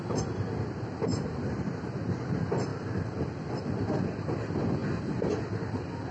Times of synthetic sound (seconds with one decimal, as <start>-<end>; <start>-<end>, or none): 1.1-1.8; 2.7-3.6